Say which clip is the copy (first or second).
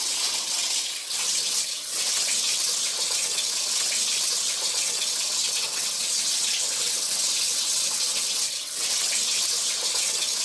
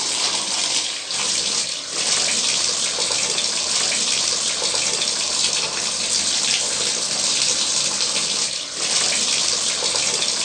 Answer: first